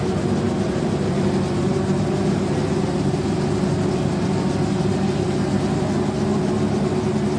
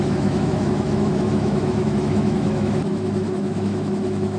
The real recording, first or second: first